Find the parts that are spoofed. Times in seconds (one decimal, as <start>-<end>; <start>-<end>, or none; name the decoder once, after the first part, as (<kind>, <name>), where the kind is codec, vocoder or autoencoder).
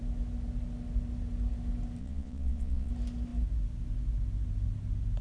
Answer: 2.0-2.9 (vocoder, Vocos)